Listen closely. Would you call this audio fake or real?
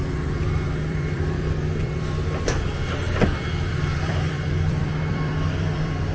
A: fake